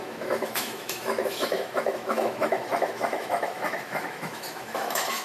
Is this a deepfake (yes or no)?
yes